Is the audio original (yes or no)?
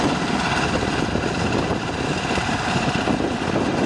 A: yes